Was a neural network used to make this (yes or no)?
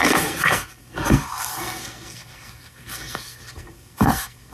yes